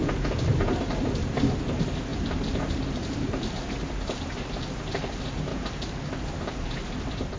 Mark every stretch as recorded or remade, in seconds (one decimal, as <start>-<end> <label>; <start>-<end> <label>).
0.0-2.1 recorded; 2.1-3.7 remade; 3.7-7.4 recorded